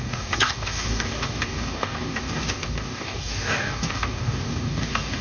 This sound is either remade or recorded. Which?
remade